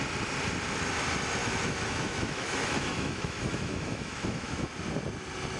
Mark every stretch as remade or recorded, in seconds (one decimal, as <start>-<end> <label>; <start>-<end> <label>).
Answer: 0.0-1.4 recorded; 1.4-4.7 remade; 4.7-5.6 recorded